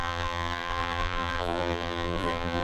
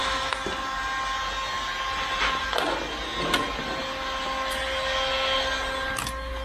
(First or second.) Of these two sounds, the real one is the second